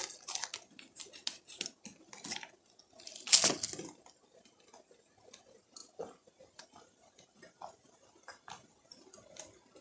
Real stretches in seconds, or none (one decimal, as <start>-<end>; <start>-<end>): 0.0-9.8